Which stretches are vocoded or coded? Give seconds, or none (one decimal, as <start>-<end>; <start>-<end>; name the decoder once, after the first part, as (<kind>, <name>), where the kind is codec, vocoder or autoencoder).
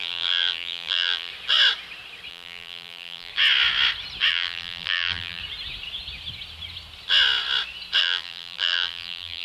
0.0-1.3 (vocoder, BigVGAN v2); 2.3-3.3; 4.3-5.4; 8.0-9.4